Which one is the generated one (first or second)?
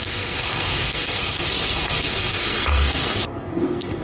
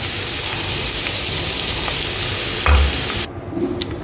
first